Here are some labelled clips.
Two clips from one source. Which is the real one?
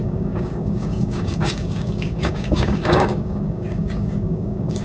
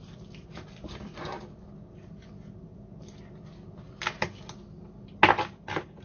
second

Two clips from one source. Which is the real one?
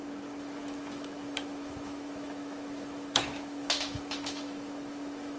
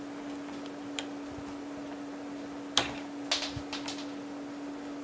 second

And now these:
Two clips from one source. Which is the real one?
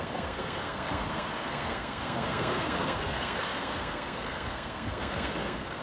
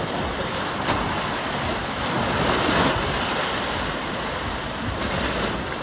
second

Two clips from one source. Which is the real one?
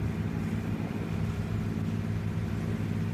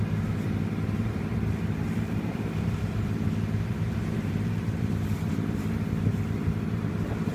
first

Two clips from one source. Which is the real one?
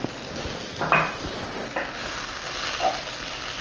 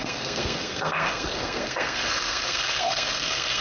first